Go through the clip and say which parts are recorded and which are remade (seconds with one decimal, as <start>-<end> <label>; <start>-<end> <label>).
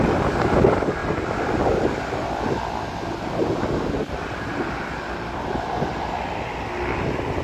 0.0-7.4 recorded